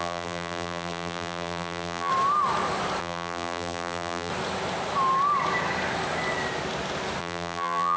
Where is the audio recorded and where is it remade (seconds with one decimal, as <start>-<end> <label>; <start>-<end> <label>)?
0.0-2.1 remade; 2.1-3.0 recorded; 3.0-4.3 remade; 4.3-7.2 recorded; 7.2-8.0 remade